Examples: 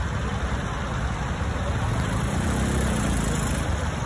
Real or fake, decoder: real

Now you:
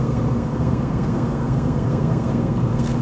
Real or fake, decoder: fake, codec, SNAC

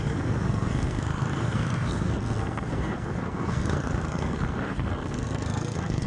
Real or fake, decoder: fake, codec, SNAC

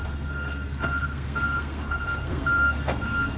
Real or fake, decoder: fake, codec, SNAC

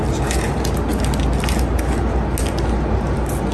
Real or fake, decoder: real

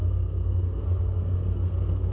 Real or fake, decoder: fake, codec, SNAC